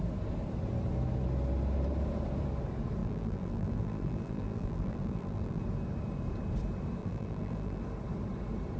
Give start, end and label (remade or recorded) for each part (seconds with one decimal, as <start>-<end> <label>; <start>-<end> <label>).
0.0-3.0 recorded; 3.0-5.6 remade; 5.6-7.0 recorded; 7.0-7.8 remade; 7.8-8.8 recorded